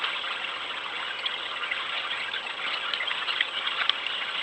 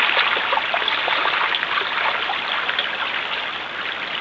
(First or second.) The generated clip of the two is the first